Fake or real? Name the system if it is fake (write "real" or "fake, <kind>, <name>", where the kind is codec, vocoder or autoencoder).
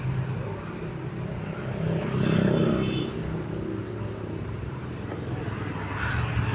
real